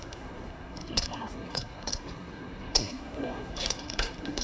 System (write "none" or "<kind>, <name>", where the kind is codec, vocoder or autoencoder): codec, SNAC